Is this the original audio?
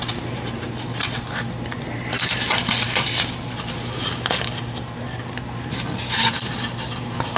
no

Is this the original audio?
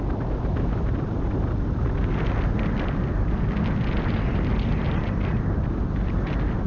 yes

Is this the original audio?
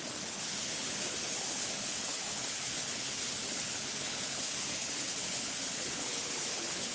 no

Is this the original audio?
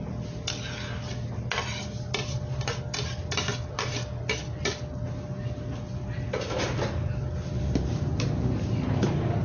yes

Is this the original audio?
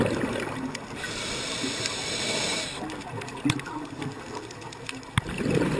yes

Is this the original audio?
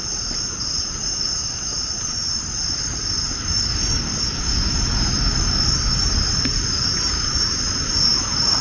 no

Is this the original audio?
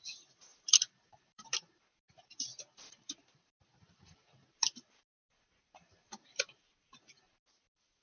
no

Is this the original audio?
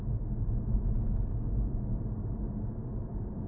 yes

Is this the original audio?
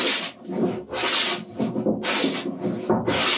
yes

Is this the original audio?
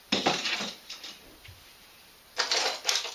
yes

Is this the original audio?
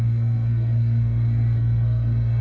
no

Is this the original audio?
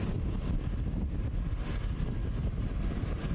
yes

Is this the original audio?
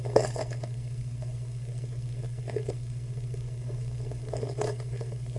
no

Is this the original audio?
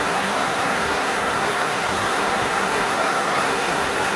no